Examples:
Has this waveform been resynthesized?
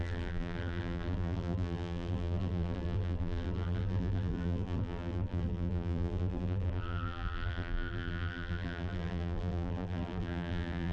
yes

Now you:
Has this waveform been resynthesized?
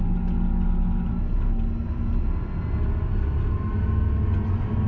no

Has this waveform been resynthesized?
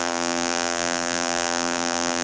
yes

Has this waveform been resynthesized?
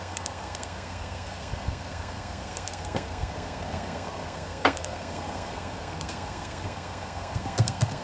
yes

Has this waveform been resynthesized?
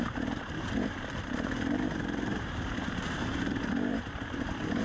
yes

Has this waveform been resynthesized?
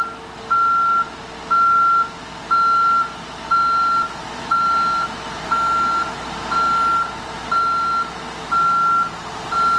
no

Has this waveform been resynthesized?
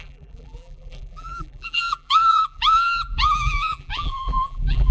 yes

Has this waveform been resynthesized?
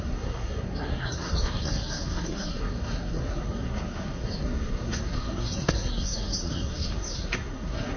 yes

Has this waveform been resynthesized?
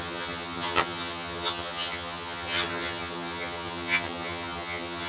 yes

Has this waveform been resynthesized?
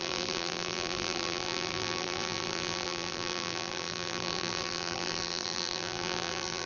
yes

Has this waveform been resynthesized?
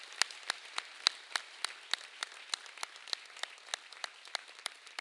no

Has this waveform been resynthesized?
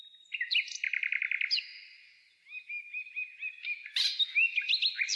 no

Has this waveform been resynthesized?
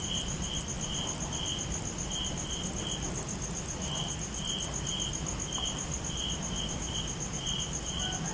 no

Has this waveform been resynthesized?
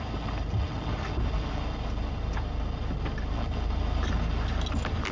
no